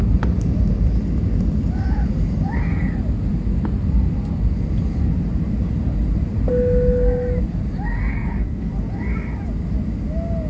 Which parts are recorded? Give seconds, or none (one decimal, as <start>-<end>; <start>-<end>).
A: 0.0-8.1; 8.7-10.5